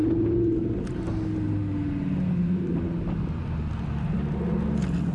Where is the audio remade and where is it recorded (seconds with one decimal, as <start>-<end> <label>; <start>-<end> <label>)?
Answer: 0.0-5.1 recorded